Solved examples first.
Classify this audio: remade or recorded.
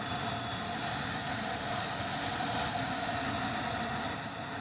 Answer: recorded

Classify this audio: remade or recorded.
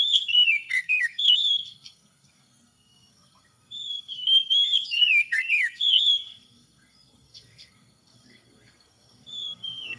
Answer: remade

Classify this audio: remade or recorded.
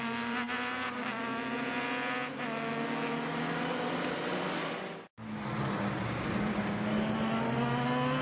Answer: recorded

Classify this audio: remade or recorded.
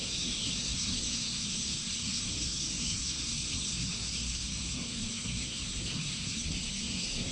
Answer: remade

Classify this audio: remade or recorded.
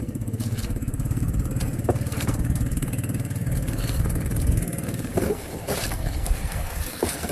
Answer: remade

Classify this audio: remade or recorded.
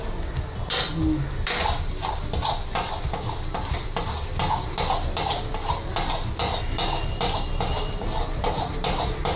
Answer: recorded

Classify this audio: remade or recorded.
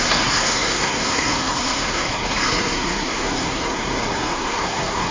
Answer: remade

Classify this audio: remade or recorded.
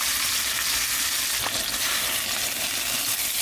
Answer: recorded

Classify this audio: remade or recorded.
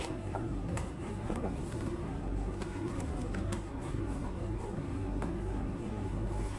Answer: remade